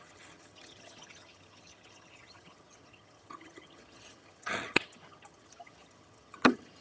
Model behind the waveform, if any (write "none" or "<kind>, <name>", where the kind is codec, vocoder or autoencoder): vocoder, HiFi-GAN